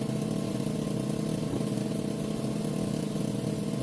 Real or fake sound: real